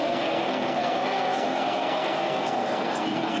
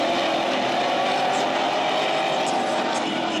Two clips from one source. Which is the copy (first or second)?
first